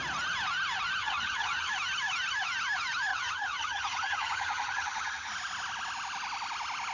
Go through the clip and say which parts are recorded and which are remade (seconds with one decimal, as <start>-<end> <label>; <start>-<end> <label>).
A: 0.0-1.0 recorded; 1.0-1.7 remade; 1.7-3.1 recorded; 3.1-5.3 remade; 5.3-6.9 recorded